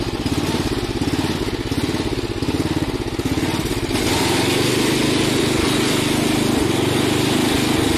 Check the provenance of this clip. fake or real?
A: real